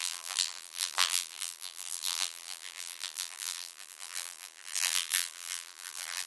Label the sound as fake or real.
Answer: fake